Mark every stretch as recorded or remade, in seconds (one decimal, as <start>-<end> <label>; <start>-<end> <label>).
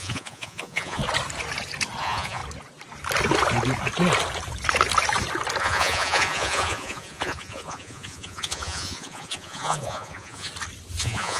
0.0-1.0 remade; 1.0-2.0 recorded; 2.0-2.4 remade; 2.4-5.6 recorded; 5.6-10.5 remade; 10.5-11.0 recorded; 11.0-11.4 remade